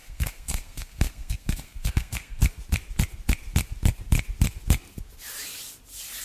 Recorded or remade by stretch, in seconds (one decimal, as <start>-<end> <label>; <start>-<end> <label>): 0.0-2.4 remade; 2.4-6.2 recorded